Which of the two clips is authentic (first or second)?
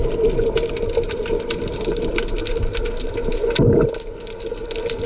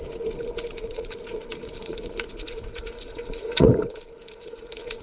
first